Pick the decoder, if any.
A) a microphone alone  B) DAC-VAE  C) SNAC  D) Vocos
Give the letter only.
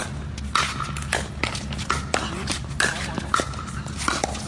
A